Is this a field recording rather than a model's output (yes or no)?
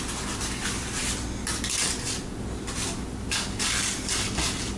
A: yes